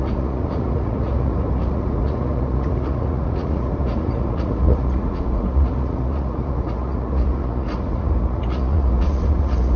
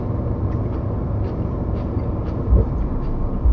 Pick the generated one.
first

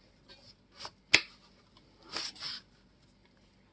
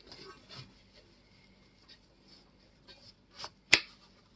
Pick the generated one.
second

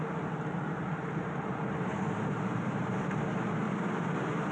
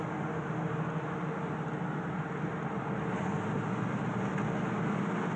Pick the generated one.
first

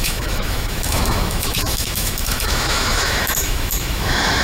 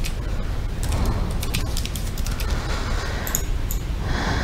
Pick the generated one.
first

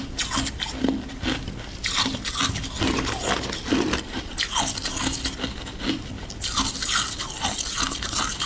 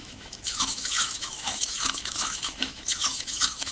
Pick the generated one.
second